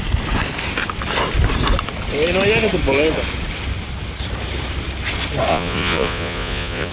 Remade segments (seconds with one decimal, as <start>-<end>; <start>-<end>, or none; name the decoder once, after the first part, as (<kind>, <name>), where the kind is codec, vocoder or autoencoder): 5.5-6.9 (vocoder, Vocos)